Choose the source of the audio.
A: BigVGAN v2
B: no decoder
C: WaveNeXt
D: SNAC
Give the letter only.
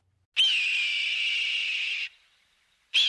B